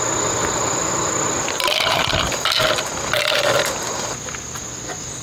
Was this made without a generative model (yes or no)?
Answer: yes